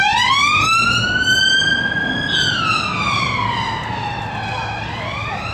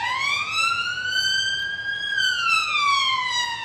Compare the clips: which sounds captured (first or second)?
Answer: first